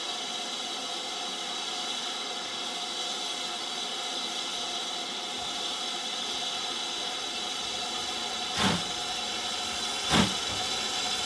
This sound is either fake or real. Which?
real